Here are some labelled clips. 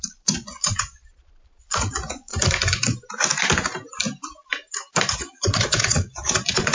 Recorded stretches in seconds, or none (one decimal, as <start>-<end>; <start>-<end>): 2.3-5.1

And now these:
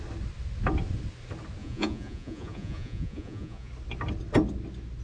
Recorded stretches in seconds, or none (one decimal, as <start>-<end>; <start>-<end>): 0.0-1.6; 3.7-5.0

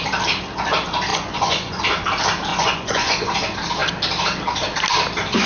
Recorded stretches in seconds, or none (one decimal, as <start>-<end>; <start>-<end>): 0.0-1.1; 1.8-2.5; 3.3-5.5